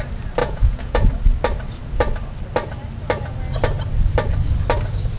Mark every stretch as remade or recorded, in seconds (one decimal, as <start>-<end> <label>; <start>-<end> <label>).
0.0-0.4 recorded; 0.4-1.1 remade; 1.1-5.2 recorded